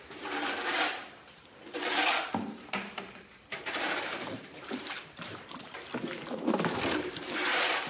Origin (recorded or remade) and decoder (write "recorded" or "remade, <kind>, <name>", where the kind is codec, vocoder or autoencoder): remade, vocoder, BigVGAN v2